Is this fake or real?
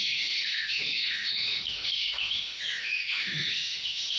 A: fake